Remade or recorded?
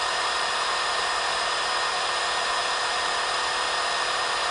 recorded